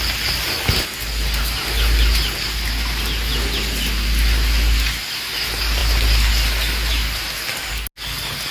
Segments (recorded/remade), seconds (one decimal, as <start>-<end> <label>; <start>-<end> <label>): 0.0-8.5 recorded